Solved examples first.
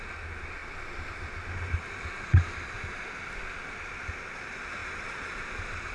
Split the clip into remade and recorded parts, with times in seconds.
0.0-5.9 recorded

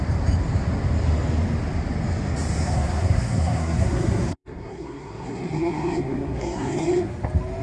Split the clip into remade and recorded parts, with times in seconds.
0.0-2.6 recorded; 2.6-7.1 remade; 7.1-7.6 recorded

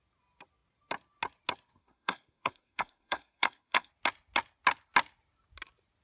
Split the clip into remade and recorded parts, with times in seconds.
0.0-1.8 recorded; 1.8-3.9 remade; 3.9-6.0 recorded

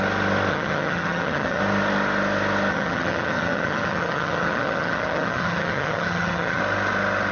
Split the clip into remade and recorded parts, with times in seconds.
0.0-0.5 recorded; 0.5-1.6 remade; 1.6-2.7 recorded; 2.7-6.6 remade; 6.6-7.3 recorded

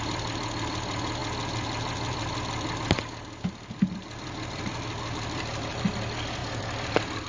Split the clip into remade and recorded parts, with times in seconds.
0.0-1.2 remade; 1.2-3.5 recorded; 3.5-7.3 remade

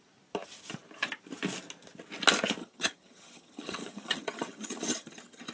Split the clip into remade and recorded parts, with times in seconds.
0.0-2.6 recorded; 2.6-5.5 remade

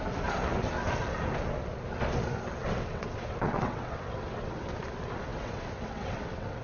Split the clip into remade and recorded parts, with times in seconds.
0.0-2.6 recorded; 2.6-4.8 remade; 4.8-5.3 recorded; 5.3-6.6 remade